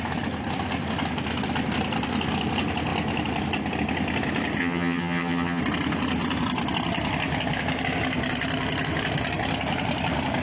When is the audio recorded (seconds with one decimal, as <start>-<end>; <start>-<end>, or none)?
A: 0.0-4.6; 5.6-10.4